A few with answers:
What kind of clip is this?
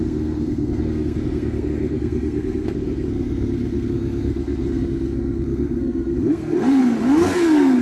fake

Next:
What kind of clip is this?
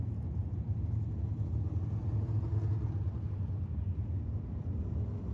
real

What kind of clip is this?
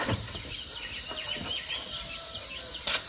real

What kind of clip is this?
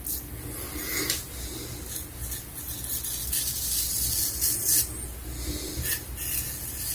real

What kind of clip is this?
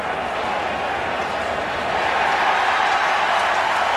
real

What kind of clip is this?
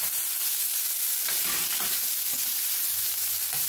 real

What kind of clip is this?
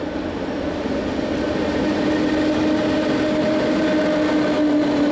real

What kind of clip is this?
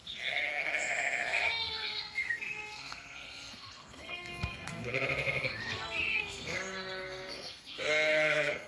fake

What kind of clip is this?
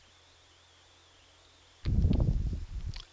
real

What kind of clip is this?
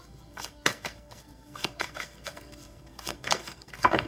fake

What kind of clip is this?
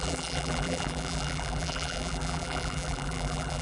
fake